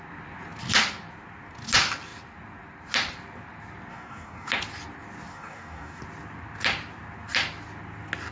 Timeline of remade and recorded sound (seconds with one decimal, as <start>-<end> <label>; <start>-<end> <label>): 0.0-3.9 recorded; 3.9-4.5 remade; 4.5-5.3 recorded; 5.3-6.0 remade; 6.0-8.3 recorded